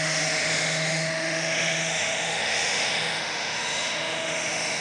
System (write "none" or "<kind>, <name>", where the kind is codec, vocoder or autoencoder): autoencoder, DAC-VAE